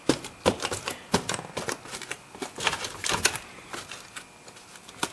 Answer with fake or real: real